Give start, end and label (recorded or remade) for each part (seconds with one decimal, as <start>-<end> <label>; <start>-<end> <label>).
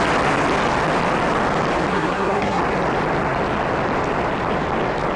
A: 0.0-1.9 recorded; 1.9-2.6 remade; 2.6-5.2 recorded